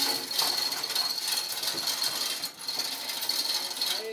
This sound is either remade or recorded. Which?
recorded